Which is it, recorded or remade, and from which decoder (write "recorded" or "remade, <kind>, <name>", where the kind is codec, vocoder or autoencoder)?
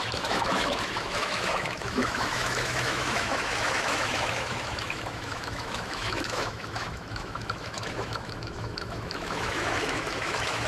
remade, autoencoder, DAC-VAE